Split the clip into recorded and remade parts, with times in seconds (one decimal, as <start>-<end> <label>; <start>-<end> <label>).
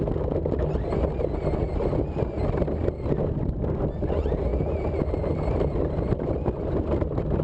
0.0-4.5 recorded; 4.5-6.6 remade; 6.6-7.4 recorded